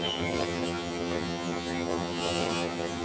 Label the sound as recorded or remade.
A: remade